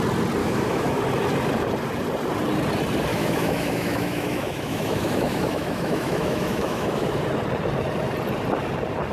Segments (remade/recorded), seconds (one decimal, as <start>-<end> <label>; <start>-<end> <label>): 0.0-0.4 recorded; 0.4-1.0 remade; 1.0-3.1 recorded; 3.1-7.2 remade; 7.2-9.1 recorded